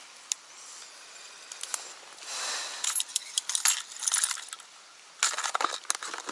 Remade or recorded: recorded